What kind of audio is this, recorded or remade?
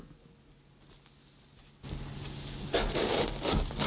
recorded